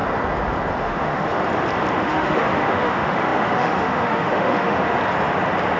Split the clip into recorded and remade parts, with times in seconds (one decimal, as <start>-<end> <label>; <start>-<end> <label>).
0.0-0.8 recorded; 0.8-1.4 remade; 1.4-2.0 recorded; 2.0-5.0 remade; 5.0-5.8 recorded